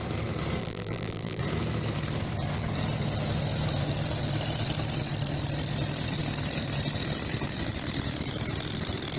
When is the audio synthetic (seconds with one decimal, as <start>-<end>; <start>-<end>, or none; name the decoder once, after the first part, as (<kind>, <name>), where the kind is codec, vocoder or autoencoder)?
0.6-1.4 (vocoder, BigVGAN v2)